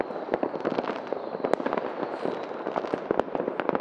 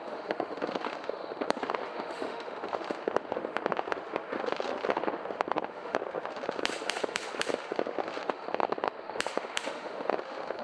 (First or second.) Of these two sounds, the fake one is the second